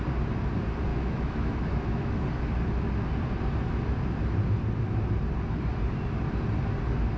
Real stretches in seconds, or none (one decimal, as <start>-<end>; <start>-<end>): 0.0-0.9; 2.2-7.2